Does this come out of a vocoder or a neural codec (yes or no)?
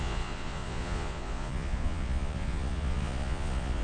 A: yes